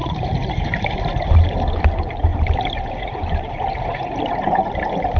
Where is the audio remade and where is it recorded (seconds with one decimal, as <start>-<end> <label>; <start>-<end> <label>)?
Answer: 0.0-1.0 remade; 1.0-2.3 recorded; 2.3-4.8 remade; 4.8-5.2 recorded